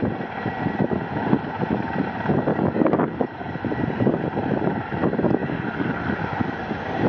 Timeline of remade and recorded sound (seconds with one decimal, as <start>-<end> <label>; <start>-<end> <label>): 0.0-2.5 recorded; 2.5-3.5 remade; 3.5-5.4 recorded; 5.4-6.0 remade; 6.0-7.1 recorded